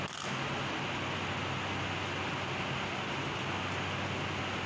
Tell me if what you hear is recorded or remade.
recorded